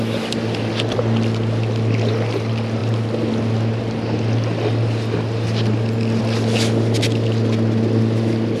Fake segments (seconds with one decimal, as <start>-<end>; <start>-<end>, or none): none